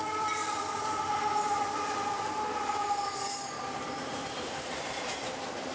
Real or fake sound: fake